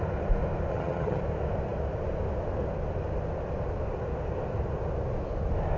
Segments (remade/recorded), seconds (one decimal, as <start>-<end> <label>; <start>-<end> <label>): 0.0-0.7 recorded; 0.7-1.2 remade; 1.2-5.8 recorded